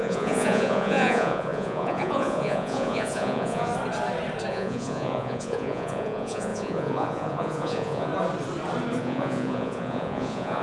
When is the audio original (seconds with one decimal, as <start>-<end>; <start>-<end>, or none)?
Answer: 3.7-4.5; 8.1-9.0